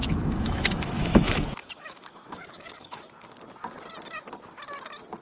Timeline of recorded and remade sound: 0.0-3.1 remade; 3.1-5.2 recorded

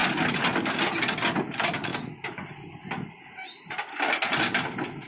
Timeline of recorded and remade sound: 0.0-5.1 recorded

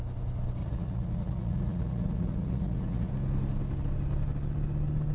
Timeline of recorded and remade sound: 0.0-0.6 recorded; 0.6-3.1 remade; 3.1-5.1 recorded

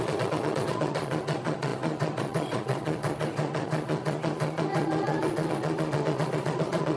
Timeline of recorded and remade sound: 0.0-7.0 remade

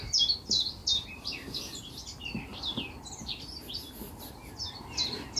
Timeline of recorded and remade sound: 0.0-0.8 recorded; 0.8-2.0 remade; 2.0-5.4 recorded

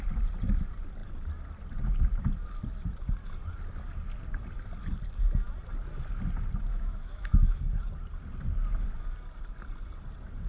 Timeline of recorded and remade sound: 0.0-6.7 recorded; 6.7-7.6 remade; 7.6-10.5 recorded

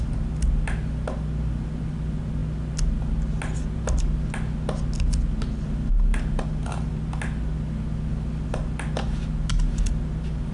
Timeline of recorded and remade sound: 0.0-10.5 recorded

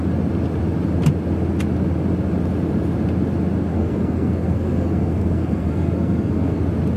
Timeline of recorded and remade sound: 0.0-3.7 recorded; 3.7-6.6 remade; 6.6-7.0 recorded